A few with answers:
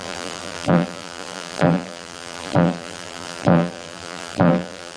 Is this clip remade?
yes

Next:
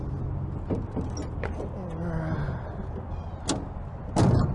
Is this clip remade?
no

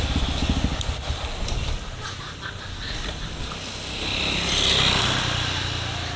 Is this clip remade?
no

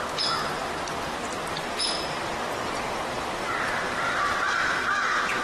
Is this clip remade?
no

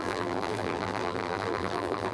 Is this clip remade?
yes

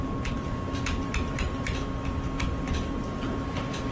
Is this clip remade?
no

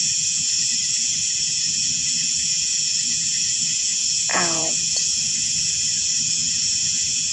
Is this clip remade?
yes